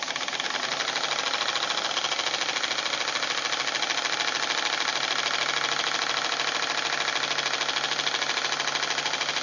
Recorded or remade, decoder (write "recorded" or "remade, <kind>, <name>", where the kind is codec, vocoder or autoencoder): recorded